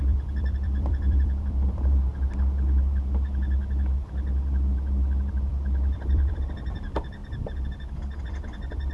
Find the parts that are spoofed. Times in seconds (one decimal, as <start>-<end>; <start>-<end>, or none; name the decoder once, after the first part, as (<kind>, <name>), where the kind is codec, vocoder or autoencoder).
0.0-2.1 (vocoder, BigVGAN v2); 5.3-7.2; 8.2-8.9